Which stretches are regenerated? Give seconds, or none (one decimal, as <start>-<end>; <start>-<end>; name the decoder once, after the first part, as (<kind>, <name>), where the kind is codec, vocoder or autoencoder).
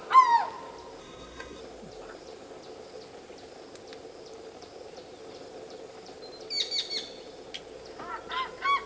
1.0-1.6 (codec, SNAC)